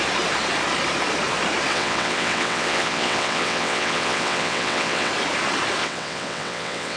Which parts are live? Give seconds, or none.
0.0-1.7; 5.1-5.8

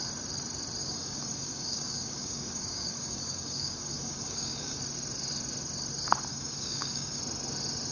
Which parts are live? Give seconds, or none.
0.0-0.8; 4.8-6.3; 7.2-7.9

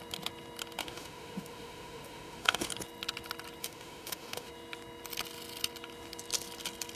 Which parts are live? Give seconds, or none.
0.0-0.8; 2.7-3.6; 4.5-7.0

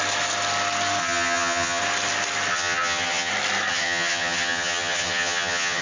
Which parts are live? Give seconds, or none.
0.0-1.0; 1.8-2.5; 3.3-3.7

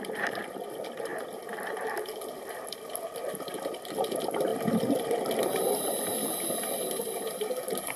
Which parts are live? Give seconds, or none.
0.0-1.1; 3.5-4.5; 5.2-8.0

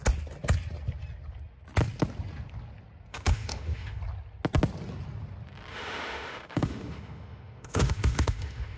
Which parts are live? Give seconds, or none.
0.0-3.1; 4.0-5.7

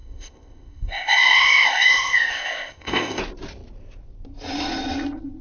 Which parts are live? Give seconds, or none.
3.2-5.4

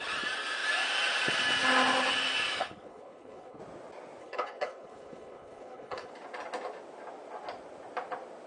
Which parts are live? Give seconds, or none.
0.0-2.6; 3.6-4.2; 6.1-8.5